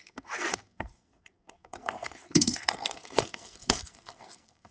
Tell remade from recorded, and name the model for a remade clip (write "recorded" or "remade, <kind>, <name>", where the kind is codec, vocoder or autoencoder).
remade, codec, SNAC